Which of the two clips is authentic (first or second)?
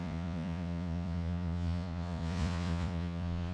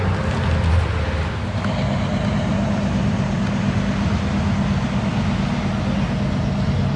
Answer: second